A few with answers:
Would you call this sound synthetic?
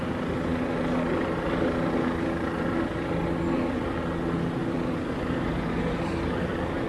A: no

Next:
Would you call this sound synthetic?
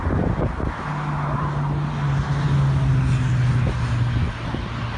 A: no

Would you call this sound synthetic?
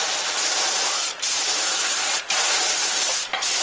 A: no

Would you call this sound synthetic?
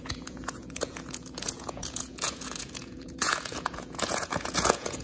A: yes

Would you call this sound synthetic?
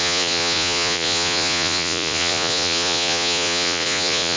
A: yes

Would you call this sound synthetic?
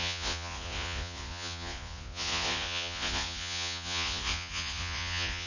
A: yes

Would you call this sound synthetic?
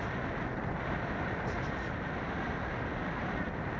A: no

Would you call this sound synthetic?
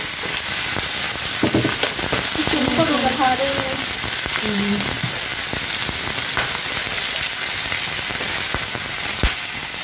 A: no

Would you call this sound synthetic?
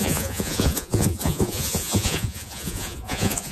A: yes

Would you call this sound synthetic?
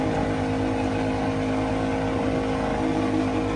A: no